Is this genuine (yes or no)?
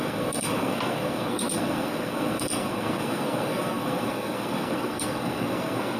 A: no